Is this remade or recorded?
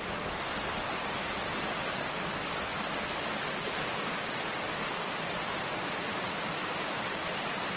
recorded